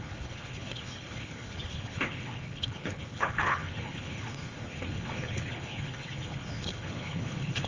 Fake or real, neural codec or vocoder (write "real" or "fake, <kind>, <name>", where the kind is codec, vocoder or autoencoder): fake, codec, HILCodec